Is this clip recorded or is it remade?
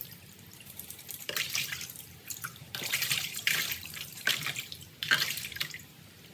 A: remade